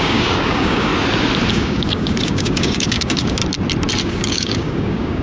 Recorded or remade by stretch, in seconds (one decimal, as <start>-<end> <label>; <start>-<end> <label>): 0.0-0.9 remade; 0.9-1.5 recorded; 1.5-3.4 remade; 3.4-4.0 recorded; 4.0-5.2 remade